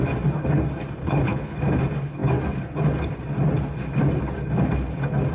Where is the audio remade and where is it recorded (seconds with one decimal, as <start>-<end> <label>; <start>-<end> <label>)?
0.0-1.0 recorded; 1.0-1.6 remade; 1.6-5.3 recorded